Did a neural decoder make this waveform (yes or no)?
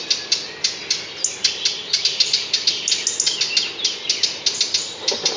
no